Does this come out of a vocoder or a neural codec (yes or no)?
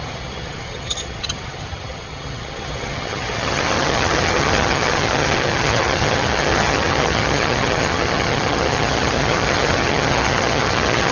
yes